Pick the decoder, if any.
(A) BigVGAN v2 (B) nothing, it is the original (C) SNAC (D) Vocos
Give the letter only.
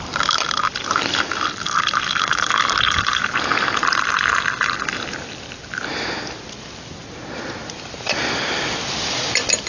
B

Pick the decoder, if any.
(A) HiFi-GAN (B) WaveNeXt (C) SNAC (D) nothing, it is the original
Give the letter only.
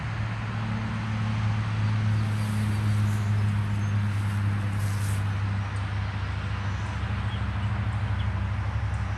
D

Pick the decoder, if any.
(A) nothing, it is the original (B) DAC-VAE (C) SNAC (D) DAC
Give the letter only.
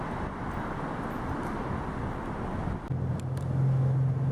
A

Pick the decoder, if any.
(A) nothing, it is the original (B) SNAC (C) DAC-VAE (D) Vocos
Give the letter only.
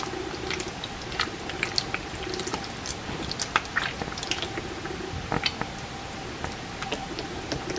A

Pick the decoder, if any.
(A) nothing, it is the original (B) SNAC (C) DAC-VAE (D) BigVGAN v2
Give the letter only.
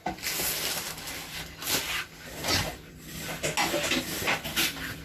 A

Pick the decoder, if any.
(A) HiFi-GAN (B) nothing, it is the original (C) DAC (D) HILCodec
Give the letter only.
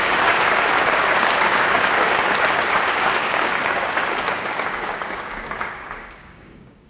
C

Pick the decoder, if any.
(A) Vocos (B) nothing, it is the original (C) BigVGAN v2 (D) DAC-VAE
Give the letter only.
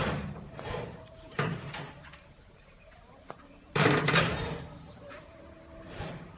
C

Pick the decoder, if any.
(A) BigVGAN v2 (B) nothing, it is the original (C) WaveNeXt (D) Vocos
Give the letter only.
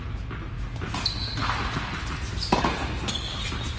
B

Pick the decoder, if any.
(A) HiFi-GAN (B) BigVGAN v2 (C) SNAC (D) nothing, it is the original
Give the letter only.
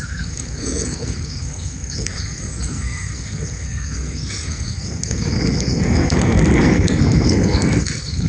C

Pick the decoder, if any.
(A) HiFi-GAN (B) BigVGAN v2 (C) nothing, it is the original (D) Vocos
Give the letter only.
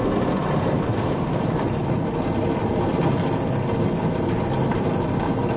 C